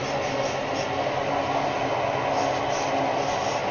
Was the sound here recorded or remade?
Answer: recorded